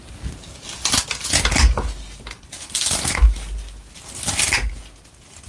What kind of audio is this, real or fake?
real